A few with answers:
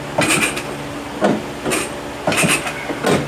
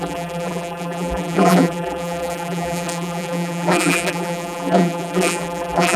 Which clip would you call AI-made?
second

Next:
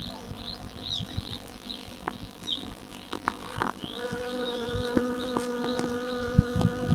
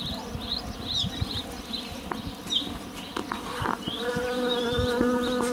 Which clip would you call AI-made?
first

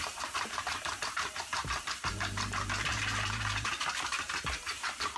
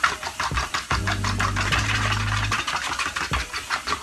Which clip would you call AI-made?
first